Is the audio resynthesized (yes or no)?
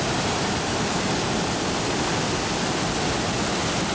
no